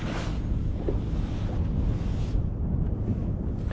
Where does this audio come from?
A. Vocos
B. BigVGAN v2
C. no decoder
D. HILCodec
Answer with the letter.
C